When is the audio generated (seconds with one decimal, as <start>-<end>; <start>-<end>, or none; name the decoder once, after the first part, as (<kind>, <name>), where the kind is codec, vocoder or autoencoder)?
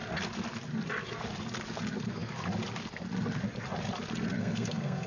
4.4-5.1 (codec, SNAC)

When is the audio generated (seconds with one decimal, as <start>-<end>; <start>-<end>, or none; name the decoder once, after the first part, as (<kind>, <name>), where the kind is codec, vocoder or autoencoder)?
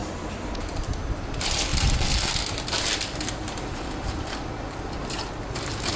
0.0-0.5 (vocoder, BigVGAN v2); 1.7-5.3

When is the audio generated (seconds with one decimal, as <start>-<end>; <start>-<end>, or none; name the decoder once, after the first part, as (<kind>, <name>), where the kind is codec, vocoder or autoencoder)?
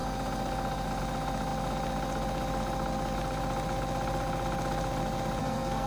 5.4-5.9 (codec, SNAC)